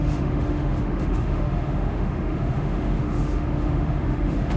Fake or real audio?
fake